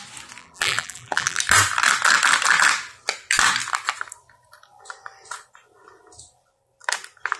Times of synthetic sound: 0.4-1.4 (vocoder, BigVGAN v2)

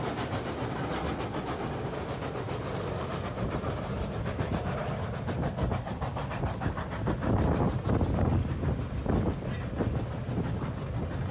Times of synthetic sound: 4.8-6.2 (vocoder, BigVGAN v2)

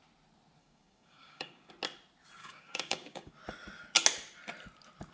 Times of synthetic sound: 0.6-1.7 (codec, DAC); 2.4-3.3

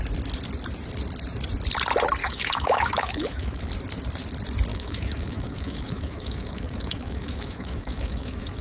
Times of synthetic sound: 2.2-3.7 (autoencoder, DAC-VAE); 4.7-8.6

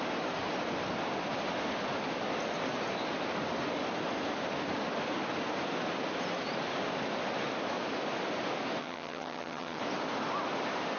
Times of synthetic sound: 8.8-9.8 (vocoder, HiFi-GAN)